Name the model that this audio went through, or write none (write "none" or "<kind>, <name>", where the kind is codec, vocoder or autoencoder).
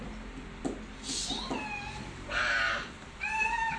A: none